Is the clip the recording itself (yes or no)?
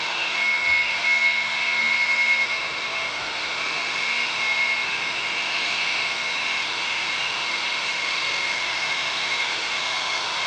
no